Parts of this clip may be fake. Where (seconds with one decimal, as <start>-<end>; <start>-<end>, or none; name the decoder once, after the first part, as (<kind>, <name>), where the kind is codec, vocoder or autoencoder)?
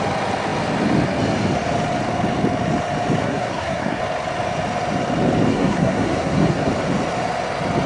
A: 3.2-4.0 (codec, SNAC); 5.5-6.7